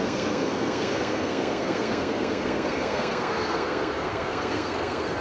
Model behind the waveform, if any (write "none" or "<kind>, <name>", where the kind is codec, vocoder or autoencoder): codec, SNAC